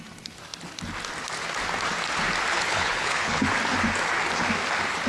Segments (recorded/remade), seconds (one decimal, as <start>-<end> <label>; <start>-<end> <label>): 0.0-2.5 recorded; 2.5-3.5 remade; 3.5-5.1 recorded